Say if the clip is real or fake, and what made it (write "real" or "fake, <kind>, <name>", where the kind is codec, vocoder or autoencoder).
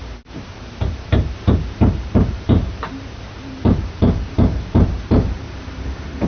fake, vocoder, BigVGAN v2